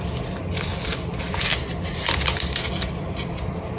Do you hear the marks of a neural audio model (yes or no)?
no